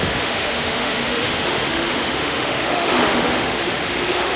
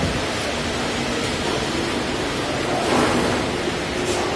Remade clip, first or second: first